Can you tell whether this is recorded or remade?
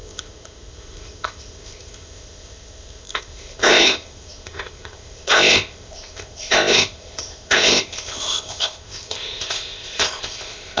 remade